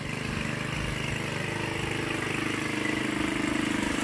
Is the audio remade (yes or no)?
no